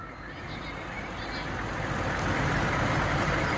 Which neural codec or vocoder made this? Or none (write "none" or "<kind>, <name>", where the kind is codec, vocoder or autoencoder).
none